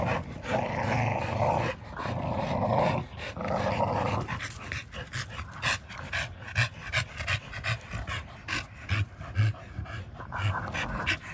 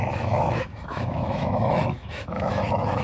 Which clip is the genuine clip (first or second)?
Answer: first